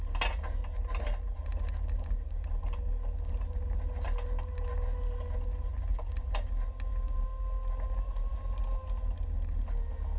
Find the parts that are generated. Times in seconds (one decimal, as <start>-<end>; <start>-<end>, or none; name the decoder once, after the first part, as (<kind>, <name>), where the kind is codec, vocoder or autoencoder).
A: 5.9-6.5 (vocoder, BigVGAN v2)